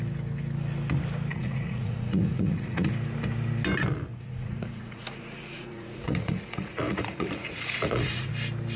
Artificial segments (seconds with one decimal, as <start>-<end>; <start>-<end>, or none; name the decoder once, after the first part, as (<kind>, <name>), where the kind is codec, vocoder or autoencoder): 1.3-2.9 (vocoder, Vocos); 4.1-8.3